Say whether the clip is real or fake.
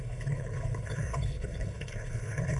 fake